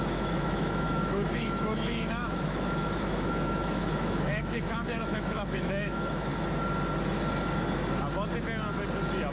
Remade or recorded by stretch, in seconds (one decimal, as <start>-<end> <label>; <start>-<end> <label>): 0.0-6.3 remade; 6.3-9.3 recorded